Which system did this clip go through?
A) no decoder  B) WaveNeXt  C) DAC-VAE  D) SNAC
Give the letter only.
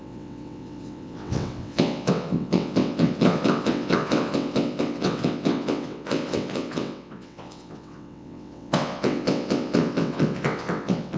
B